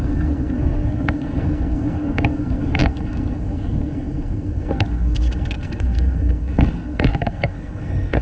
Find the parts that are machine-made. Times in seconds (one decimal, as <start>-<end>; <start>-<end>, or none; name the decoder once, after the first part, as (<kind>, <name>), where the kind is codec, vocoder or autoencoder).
0.0-8.2 (codec, SNAC)